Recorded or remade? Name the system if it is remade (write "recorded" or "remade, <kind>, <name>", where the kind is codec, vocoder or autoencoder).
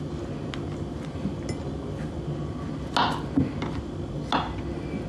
recorded